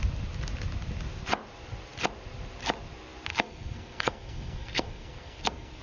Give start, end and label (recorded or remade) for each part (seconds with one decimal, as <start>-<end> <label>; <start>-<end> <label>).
0.0-3.3 recorded; 3.3-5.8 remade